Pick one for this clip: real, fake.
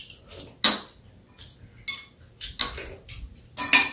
real